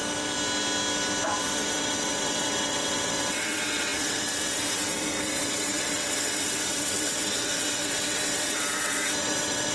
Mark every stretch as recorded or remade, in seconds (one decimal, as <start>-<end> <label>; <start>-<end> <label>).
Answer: 0.0-1.4 recorded; 1.4-9.7 remade